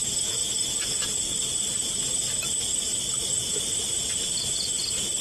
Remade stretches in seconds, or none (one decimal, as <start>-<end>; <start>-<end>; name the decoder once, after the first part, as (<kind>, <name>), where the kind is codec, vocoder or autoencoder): 0.0-0.5 (vocoder, Vocos)